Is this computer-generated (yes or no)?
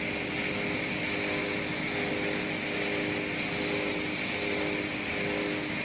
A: no